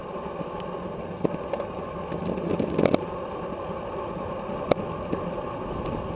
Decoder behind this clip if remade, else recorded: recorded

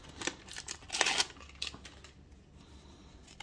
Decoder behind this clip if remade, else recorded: recorded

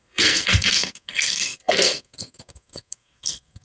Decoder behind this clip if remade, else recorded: remade, codec, SNAC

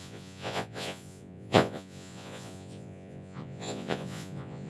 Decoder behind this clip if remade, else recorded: remade, vocoder, Vocos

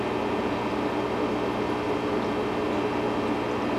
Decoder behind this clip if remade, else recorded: recorded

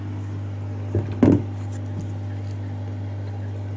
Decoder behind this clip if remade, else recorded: recorded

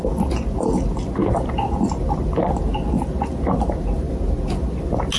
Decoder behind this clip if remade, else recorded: recorded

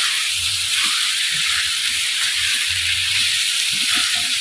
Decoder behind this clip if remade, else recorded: remade, vocoder, BigVGAN v2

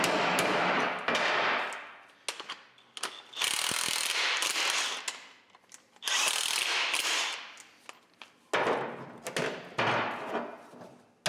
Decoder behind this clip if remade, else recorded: recorded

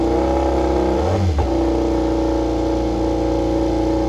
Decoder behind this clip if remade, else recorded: recorded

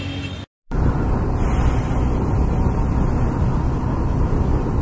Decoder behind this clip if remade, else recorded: recorded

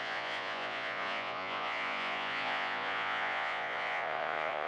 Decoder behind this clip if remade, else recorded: remade, vocoder, Vocos